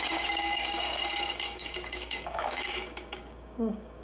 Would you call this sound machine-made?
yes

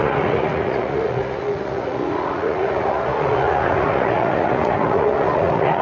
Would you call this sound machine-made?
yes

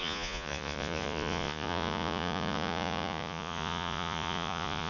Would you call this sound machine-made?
yes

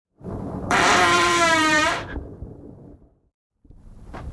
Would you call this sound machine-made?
yes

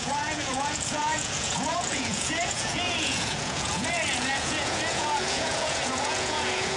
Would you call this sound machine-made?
yes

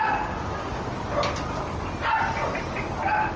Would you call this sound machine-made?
no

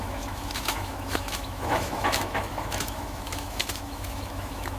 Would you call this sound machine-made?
yes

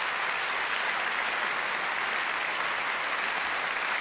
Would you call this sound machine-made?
no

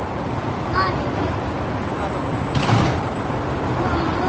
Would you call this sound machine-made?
no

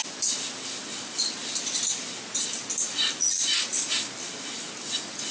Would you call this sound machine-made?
no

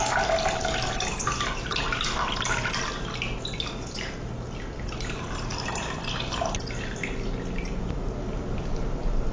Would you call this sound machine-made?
no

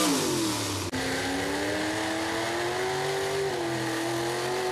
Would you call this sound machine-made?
no